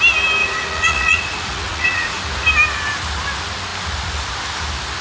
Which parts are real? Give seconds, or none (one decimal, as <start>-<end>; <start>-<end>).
0.0-0.4; 2.2-5.0

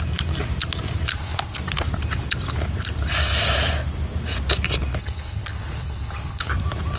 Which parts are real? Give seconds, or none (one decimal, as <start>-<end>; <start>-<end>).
0.0-1.1; 1.6-5.0; 6.5-7.0

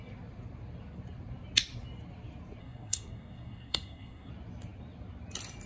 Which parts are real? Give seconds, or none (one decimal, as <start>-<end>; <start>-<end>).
0.0-2.6; 4.3-5.7

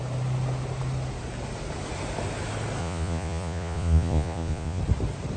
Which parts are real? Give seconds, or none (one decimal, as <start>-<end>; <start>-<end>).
0.0-2.8; 4.8-5.4

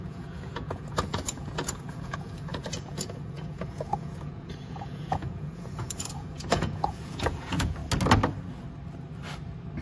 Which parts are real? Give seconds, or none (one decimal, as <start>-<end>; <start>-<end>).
7.8-9.8

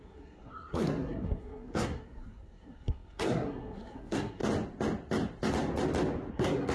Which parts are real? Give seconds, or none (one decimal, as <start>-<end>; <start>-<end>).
4.4-6.3